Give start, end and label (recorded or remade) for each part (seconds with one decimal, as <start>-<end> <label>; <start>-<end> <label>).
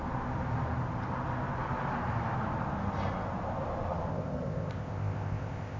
0.0-4.1 recorded; 4.1-5.8 remade